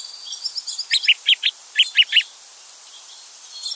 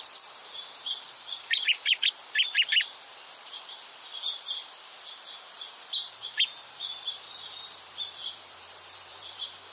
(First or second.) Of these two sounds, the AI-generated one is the second